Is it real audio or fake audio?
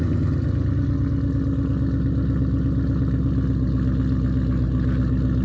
real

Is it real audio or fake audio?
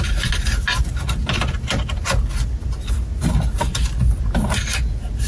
real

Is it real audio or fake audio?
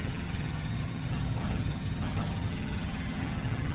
fake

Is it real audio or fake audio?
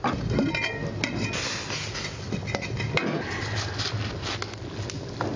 real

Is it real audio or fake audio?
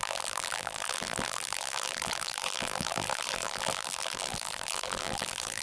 fake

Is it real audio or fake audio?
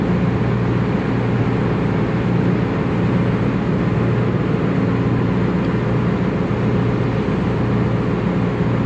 real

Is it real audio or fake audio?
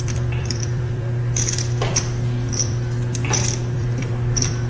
fake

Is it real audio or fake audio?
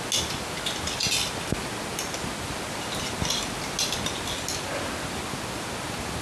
real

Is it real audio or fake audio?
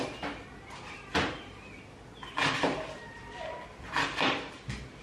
real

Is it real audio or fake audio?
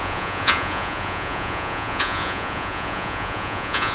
fake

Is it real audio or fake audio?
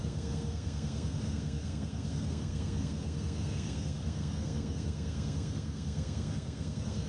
fake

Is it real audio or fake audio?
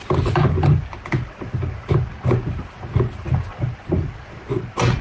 real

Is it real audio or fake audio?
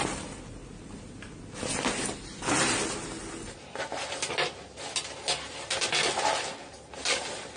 real